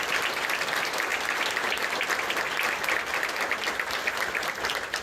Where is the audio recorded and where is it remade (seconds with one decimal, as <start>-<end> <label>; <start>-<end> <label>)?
0.0-5.0 recorded